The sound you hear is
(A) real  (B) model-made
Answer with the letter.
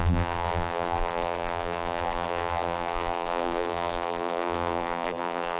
B